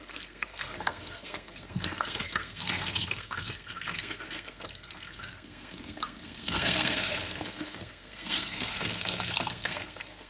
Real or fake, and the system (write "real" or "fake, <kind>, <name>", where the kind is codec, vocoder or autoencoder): fake, codec, SNAC